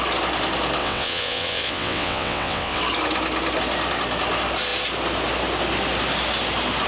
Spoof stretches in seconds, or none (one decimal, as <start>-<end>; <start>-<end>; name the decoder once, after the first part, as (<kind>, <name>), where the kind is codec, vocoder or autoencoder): 0.8-2.8 (vocoder, WaveNeXt)

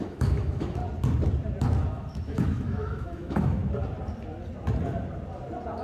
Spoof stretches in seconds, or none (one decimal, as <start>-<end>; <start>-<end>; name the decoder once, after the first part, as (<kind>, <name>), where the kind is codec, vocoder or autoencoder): 0.0-0.8 (autoencoder, DAC-VAE); 1.9-3.6

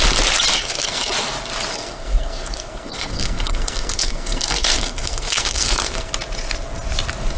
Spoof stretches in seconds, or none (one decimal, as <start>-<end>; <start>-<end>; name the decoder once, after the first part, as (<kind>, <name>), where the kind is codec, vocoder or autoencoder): 0.5-1.1 (codec, SNAC); 1.7-6.1

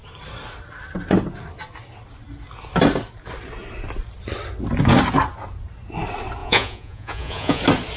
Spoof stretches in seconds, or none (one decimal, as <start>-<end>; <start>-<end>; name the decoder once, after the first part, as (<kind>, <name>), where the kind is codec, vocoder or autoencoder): 6.4-7.6 (vocoder, Vocos)

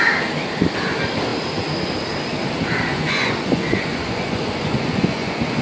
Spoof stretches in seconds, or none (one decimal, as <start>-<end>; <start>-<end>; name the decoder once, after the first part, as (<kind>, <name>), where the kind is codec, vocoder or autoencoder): 2.9-5.6 (vocoder, Vocos)

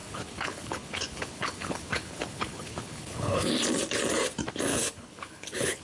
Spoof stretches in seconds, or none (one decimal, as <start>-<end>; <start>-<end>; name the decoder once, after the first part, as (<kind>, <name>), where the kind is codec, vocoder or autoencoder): 0.0-3.5 (codec, HILCodec); 4.7-5.8

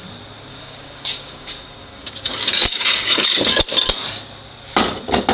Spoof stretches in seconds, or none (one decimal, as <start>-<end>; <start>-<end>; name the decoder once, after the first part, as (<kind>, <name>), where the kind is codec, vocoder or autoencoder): 0.5-3.6 (codec, DAC)